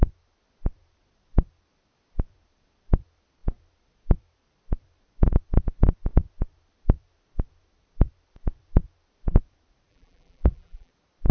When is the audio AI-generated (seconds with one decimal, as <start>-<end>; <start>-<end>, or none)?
9.9-10.9

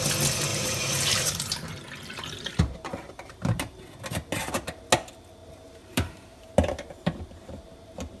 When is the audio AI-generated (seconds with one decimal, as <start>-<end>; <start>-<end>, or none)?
0.5-3.7; 5.4-6.5